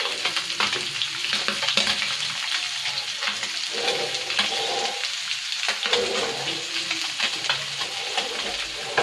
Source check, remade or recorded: recorded